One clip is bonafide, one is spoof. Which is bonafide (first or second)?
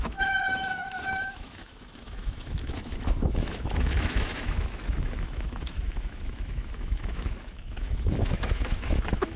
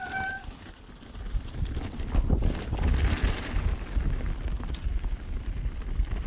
second